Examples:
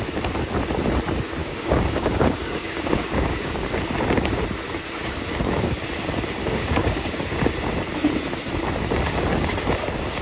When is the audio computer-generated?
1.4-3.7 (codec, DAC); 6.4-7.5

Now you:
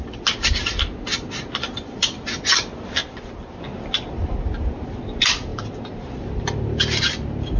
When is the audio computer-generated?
none

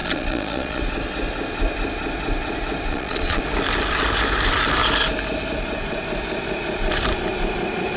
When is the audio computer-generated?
0.0-0.8 (vocoder, Vocos); 2.9-3.4

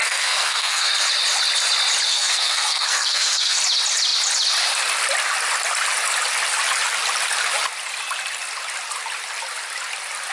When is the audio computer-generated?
0.0-0.9 (codec, SNAC); 2.1-3.6

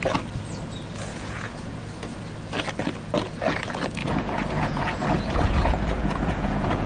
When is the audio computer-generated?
1.1-1.8 (vocoder, Vocos); 4.0-6.9